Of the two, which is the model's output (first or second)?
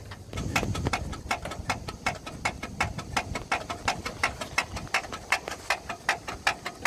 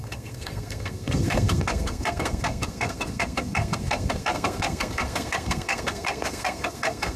second